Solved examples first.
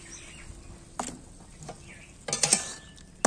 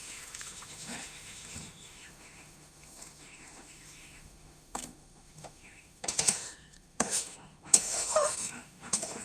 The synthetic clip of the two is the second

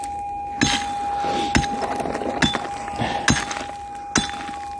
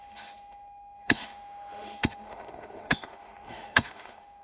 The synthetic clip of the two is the second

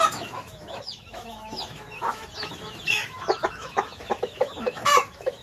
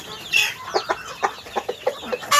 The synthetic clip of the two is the first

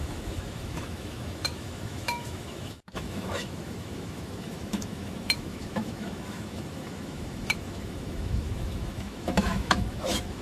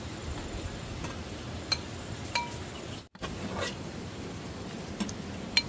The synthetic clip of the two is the first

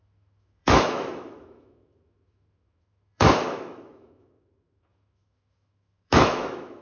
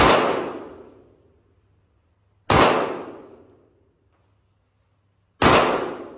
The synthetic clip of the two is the first